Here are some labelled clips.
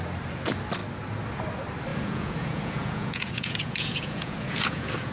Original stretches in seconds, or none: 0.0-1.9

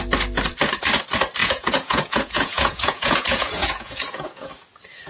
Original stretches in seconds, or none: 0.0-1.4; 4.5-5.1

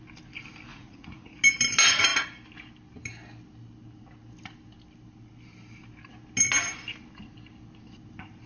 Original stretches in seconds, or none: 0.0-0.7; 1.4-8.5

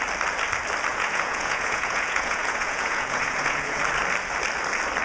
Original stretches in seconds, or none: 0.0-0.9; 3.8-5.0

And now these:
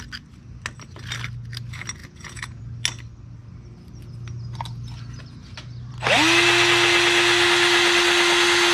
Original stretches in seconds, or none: 0.0-2.0; 2.6-8.7